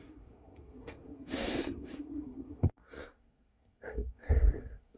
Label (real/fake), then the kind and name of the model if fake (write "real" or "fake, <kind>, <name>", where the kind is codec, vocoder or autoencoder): fake, codec, SNAC